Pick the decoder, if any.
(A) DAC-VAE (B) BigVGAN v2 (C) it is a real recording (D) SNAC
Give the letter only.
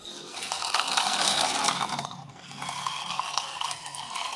D